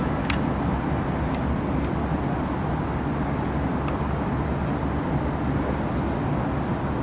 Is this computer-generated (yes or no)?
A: no